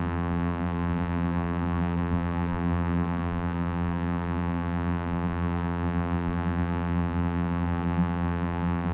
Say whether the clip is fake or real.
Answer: fake